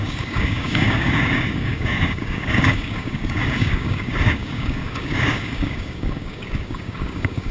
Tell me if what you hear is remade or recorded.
remade